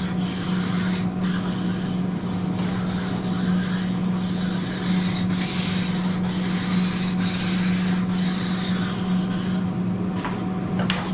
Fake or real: real